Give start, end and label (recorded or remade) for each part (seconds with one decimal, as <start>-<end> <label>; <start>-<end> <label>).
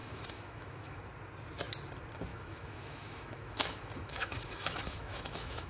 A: 0.0-1.0 remade; 1.0-2.3 recorded; 2.3-5.7 remade